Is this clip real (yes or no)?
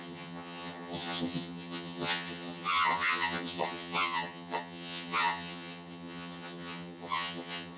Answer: no